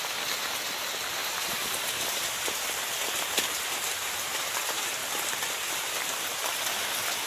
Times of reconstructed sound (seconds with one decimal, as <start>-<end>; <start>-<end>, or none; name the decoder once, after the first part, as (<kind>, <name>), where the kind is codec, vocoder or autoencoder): 1.2-4.6 (vocoder, BigVGAN v2)